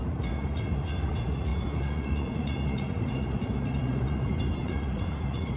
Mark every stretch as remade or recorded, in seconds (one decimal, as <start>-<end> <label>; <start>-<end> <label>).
0.0-5.6 remade